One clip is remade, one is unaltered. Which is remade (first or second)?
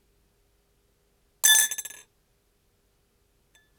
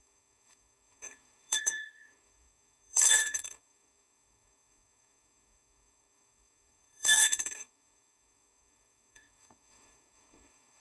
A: second